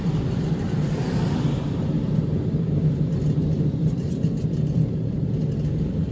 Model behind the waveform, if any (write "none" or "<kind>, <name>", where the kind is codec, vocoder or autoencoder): none